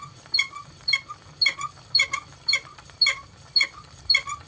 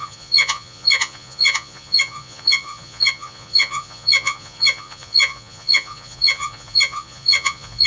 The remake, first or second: second